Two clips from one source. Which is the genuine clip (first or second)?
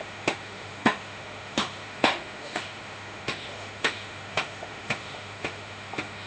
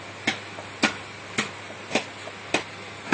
second